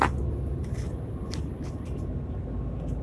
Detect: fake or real real